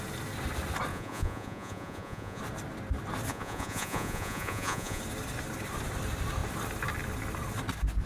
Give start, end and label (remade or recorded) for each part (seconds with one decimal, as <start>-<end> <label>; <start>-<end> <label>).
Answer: 0.0-0.9 recorded; 0.9-2.4 remade; 2.4-3.3 recorded; 3.3-5.0 remade; 5.0-8.1 recorded